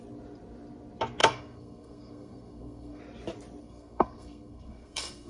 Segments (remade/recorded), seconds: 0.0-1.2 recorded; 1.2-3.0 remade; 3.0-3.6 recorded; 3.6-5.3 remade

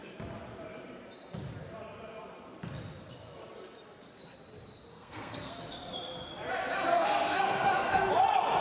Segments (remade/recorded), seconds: 0.0-4.9 recorded; 4.9-5.6 remade; 5.6-6.9 recorded; 6.9-8.1 remade; 8.1-8.6 recorded